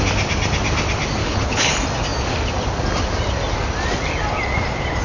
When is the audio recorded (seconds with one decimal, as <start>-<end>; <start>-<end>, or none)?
0.0-1.2; 1.7-5.0